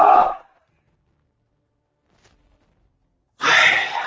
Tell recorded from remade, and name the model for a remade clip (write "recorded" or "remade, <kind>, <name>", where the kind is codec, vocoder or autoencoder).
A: recorded